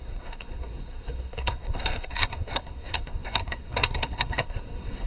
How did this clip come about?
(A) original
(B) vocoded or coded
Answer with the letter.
B